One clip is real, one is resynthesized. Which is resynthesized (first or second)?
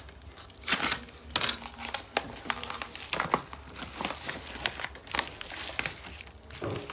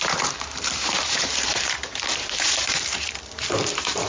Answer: second